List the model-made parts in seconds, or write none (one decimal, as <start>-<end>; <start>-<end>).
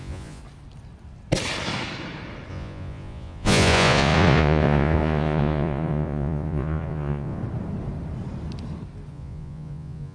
0.0-0.4; 2.5-7.4; 9.1-10.1